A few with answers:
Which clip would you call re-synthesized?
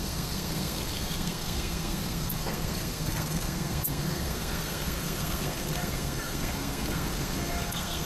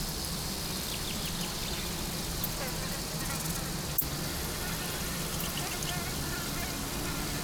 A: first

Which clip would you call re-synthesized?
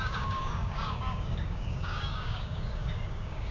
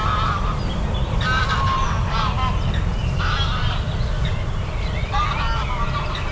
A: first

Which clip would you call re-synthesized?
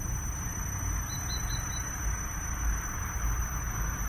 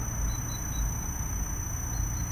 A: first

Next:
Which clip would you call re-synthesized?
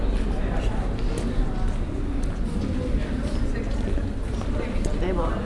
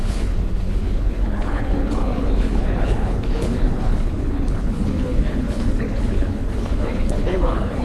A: second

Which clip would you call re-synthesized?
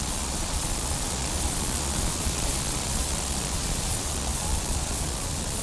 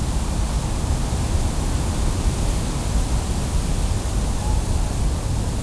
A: first